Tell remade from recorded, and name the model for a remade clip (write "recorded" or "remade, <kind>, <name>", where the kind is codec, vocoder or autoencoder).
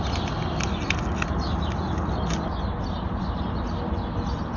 recorded